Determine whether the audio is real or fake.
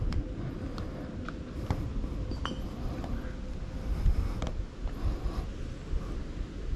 real